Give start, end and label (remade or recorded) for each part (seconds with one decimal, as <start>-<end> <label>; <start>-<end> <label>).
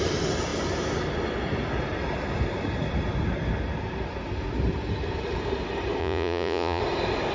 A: 0.0-6.0 recorded; 6.0-6.8 remade; 6.8-7.3 recorded